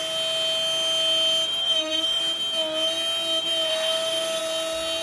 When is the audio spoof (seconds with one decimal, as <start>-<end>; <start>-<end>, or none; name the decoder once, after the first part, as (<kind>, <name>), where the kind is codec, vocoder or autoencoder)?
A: 1.6-2.2 (autoencoder, DAC-VAE); 3.7-4.4